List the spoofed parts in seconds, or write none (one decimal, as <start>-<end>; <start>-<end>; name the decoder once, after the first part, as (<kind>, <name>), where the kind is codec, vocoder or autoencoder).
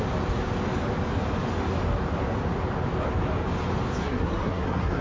4.0-5.0 (codec, SNAC)